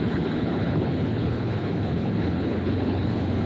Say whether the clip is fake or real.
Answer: fake